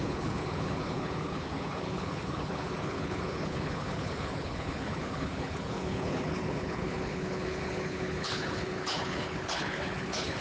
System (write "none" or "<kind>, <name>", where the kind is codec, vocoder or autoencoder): codec, HILCodec